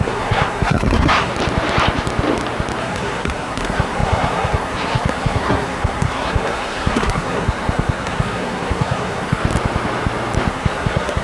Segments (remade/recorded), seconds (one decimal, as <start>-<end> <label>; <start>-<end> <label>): 0.0-1.3 remade; 1.3-2.8 recorded; 2.8-9.4 remade; 9.4-10.5 recorded; 10.5-11.2 remade